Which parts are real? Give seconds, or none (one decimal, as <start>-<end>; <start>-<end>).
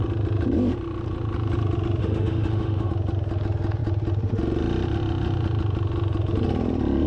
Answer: 0.0-2.0; 2.9-7.1